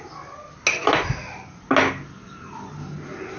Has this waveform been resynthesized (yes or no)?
no